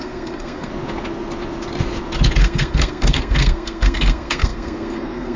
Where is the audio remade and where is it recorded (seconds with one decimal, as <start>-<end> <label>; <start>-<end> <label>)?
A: 0.0-0.7 remade; 0.7-2.4 recorded; 2.4-5.4 remade